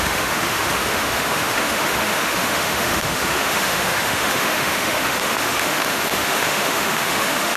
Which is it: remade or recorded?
remade